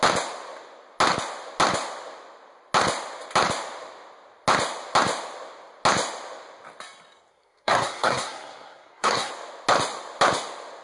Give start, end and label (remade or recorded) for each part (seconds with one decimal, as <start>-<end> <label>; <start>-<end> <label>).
0.0-7.3 recorded; 7.3-9.3 remade; 9.3-10.8 recorded